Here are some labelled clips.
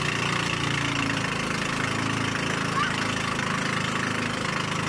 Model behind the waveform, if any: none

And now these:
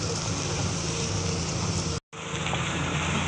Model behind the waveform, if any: none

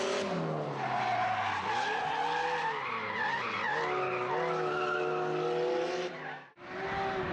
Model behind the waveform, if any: none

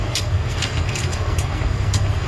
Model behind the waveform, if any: codec, SNAC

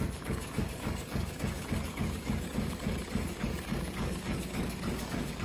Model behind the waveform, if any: codec, DAC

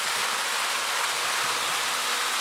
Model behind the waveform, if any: none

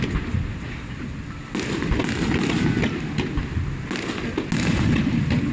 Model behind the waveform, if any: none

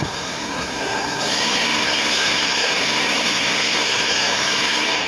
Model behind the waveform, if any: codec, SNAC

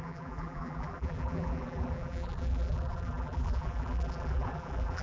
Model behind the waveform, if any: vocoder, BigVGAN v2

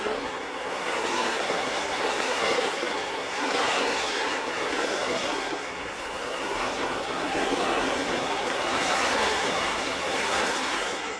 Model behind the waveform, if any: codec, SNAC